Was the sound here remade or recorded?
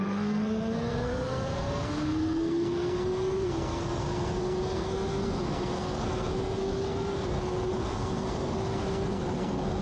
remade